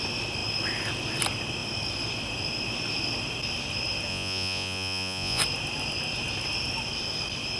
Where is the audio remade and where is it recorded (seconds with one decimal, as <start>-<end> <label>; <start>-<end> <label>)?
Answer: 0.0-4.1 recorded; 4.1-5.4 remade; 5.4-7.6 recorded